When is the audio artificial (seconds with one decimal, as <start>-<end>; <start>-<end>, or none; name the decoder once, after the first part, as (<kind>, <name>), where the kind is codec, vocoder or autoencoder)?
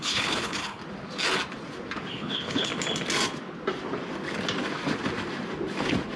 0.0-0.8 (codec, HILCodec); 2.1-2.7